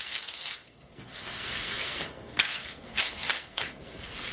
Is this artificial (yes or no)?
yes